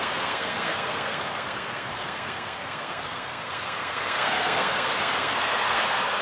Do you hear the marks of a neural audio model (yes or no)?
yes